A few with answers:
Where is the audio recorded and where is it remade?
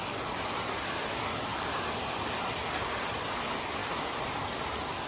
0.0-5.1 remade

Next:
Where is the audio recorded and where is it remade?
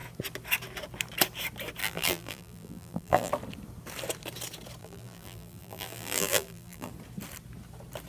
0.0-1.8 recorded; 1.8-3.3 remade; 3.3-4.8 recorded; 4.8-6.9 remade; 6.9-8.1 recorded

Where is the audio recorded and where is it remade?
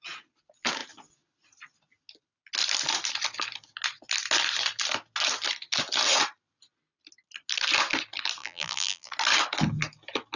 0.0-8.4 recorded; 8.4-9.1 remade; 9.1-10.4 recorded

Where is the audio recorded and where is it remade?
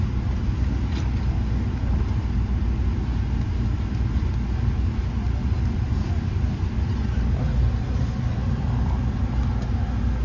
0.0-8.3 recorded; 8.3-9.0 remade; 9.0-10.2 recorded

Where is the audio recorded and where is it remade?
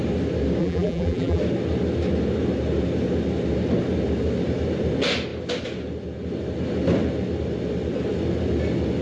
0.0-0.6 recorded; 0.6-1.4 remade; 1.4-9.0 recorded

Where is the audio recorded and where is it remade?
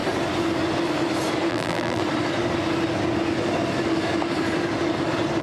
0.0-1.5 recorded; 1.5-2.0 remade; 2.0-5.4 recorded